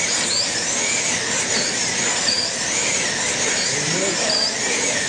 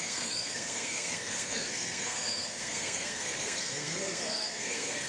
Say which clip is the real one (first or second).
first